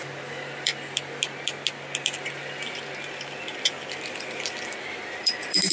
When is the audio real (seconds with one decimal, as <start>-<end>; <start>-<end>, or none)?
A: 0.7-4.1